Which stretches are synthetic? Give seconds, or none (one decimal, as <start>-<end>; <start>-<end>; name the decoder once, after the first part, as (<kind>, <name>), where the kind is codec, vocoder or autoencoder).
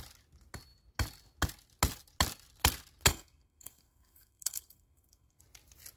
3.1-5.4 (codec, SNAC)